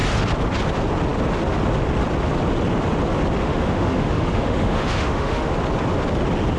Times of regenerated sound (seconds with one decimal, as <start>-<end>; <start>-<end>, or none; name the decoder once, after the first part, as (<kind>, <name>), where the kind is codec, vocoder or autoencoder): 3.4-5.5 (autoencoder, DAC-VAE)